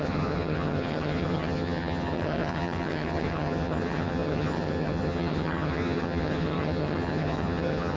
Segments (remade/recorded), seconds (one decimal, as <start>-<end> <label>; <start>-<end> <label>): 0.0-8.0 remade